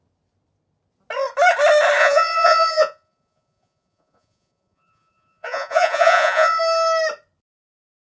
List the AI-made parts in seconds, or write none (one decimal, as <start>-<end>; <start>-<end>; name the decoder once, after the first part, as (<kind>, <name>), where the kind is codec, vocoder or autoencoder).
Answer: 2.0-6.6 (vocoder, Vocos)